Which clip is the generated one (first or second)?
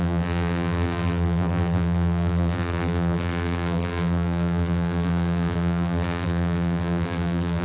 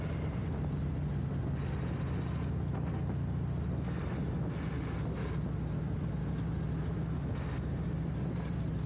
first